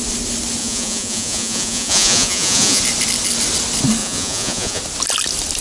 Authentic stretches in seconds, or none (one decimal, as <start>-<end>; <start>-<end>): 0.0-0.6; 2.8-4.0; 4.8-5.6